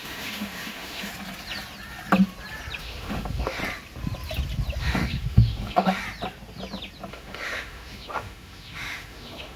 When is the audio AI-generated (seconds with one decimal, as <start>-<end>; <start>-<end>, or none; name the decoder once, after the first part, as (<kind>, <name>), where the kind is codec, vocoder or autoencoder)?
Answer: 0.0-1.1 (autoencoder, DAC-VAE); 2.8-3.6; 4.8-6.0; 7.1-9.6